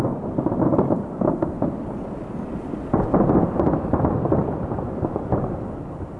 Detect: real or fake real